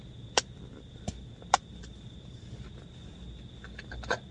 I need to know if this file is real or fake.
real